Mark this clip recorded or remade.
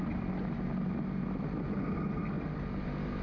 recorded